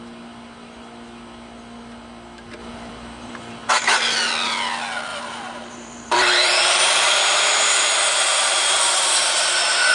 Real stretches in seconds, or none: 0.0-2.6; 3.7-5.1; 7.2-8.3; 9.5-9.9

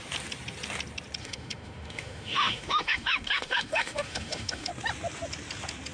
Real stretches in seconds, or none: 0.0-1.2; 4.7-5.9

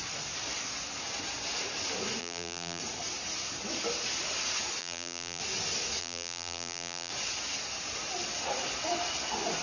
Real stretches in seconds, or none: 0.0-2.2; 2.8-4.8; 5.4-6.0; 7.1-9.6